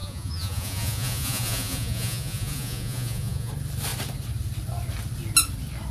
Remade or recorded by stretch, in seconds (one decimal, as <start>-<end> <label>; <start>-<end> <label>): 0.0-3.5 remade; 3.5-5.9 recorded